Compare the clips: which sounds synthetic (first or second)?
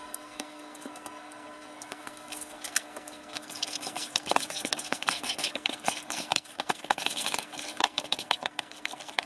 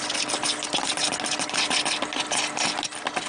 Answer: first